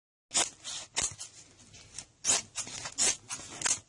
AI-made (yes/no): no